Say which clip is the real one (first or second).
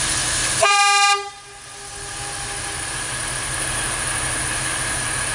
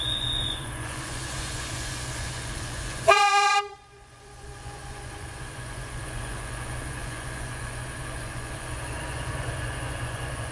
first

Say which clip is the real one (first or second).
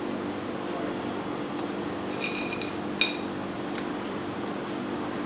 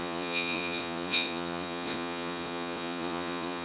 first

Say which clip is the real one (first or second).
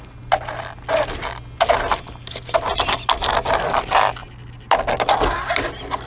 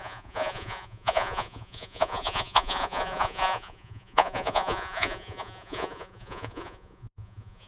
first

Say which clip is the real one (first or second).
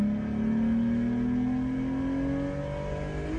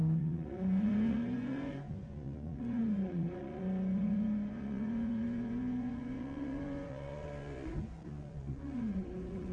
first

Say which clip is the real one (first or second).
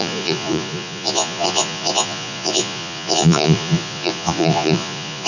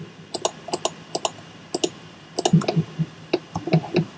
second